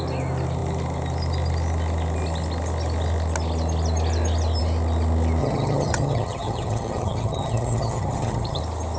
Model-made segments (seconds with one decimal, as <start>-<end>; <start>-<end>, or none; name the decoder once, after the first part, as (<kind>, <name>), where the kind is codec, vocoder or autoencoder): 5.4-8.6 (vocoder, HiFi-GAN)

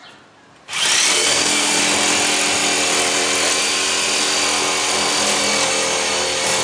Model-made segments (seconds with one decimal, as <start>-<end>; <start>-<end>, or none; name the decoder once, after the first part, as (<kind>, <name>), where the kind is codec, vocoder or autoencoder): 1.1-1.8 (codec, SNAC)

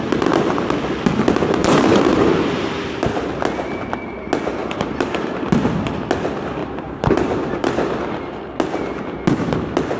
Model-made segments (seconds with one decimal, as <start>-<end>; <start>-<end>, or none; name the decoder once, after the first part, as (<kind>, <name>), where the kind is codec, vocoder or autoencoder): 1.6-3.3 (vocoder, BigVGAN v2); 4.6-5.3; 6.6-8.3

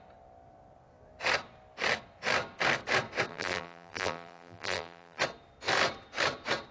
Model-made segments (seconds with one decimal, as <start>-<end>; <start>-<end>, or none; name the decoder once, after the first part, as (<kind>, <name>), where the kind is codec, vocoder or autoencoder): 3.3-5.2 (vocoder, BigVGAN v2)

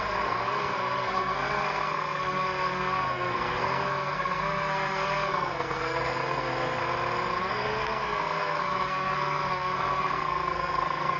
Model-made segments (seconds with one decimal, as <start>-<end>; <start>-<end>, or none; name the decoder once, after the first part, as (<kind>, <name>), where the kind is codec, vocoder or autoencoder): 0.0-6.8 (codec, SNAC); 7.5-11.2

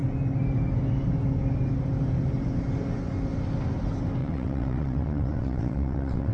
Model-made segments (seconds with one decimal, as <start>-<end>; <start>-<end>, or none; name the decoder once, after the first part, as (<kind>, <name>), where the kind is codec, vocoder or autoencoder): 4.2-6.3 (vocoder, WaveNeXt)